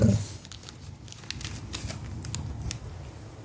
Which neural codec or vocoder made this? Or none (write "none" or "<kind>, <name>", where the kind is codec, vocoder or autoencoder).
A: none